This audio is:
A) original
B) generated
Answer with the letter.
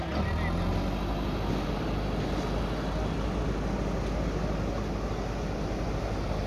A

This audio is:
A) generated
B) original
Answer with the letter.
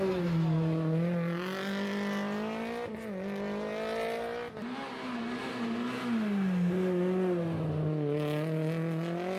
B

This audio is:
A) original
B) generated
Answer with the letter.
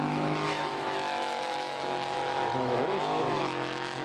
B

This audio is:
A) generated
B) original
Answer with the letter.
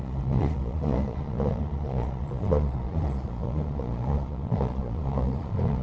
A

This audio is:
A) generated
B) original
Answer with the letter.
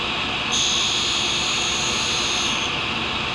B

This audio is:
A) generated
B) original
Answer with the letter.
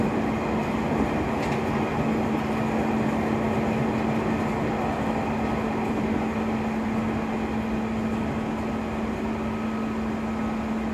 B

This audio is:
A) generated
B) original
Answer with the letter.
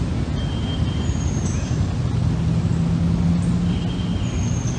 B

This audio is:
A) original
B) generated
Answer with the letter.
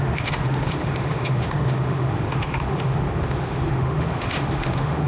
B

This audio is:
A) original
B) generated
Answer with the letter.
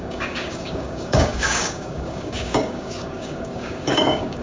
B